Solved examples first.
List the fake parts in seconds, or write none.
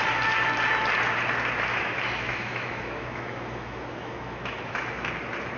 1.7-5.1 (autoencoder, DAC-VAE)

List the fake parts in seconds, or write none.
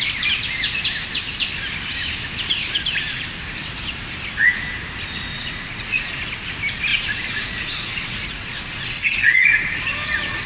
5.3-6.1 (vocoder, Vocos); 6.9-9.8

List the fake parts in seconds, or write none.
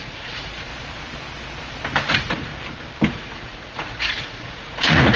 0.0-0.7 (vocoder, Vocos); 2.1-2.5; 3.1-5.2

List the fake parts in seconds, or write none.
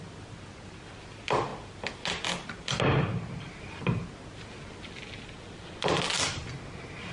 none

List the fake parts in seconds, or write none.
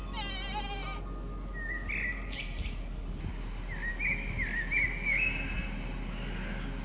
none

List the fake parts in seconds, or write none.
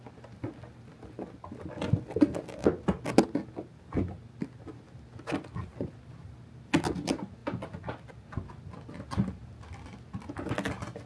none